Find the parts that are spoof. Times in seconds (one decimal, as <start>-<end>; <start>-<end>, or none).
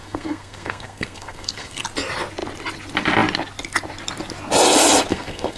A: 0.0-1.8; 5.1-5.6